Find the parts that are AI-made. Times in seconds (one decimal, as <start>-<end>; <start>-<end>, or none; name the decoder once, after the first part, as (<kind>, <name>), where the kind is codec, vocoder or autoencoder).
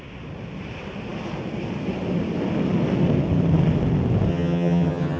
4.3-5.2 (vocoder, HiFi-GAN)